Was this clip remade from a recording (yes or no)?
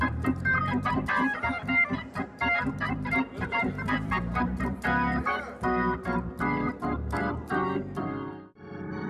yes